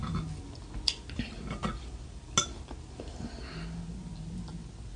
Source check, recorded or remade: recorded